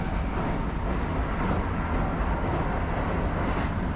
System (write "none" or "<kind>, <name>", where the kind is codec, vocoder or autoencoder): none